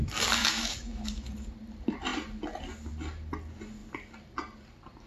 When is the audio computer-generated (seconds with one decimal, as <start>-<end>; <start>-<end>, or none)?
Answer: 0.4-1.3